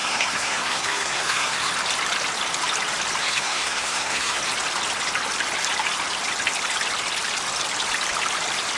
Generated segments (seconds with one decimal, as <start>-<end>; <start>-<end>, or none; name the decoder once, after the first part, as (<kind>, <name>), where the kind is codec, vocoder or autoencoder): 0.0-1.7 (codec, SNAC); 3.2-4.4